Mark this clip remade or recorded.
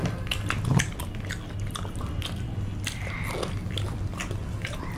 recorded